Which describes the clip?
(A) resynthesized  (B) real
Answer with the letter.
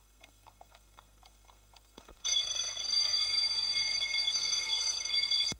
A